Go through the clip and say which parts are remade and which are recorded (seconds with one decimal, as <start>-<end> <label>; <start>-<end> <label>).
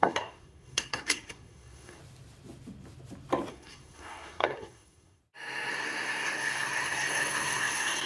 0.0-2.0 remade; 2.0-3.5 recorded; 3.5-5.2 remade; 5.2-5.7 recorded; 5.7-8.1 remade